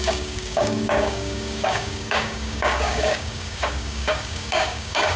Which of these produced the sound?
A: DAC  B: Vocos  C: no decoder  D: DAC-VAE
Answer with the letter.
A